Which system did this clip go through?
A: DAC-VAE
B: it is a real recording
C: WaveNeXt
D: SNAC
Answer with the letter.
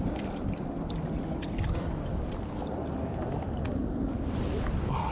B